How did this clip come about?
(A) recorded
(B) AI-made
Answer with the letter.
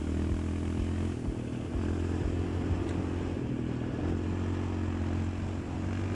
A